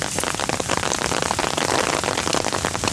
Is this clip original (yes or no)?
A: yes